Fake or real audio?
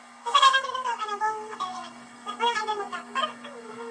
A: fake